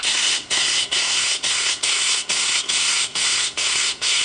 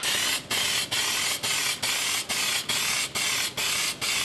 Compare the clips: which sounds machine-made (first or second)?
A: first